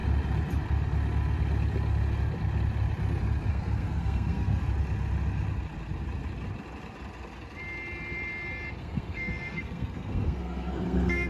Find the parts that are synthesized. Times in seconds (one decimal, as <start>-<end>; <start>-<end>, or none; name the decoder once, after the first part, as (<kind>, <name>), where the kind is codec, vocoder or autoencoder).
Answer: 3.5-4.6 (codec, SNAC); 8.8-11.3